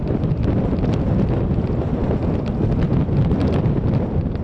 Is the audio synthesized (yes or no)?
no